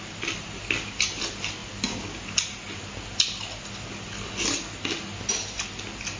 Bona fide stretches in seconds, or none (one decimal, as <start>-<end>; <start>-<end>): 0.0-6.2